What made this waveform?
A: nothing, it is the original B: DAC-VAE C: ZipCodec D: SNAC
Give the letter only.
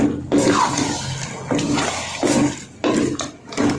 A